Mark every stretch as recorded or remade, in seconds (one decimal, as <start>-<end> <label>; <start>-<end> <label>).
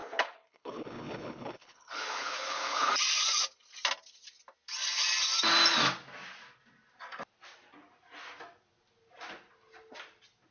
0.0-2.9 remade; 2.9-10.5 recorded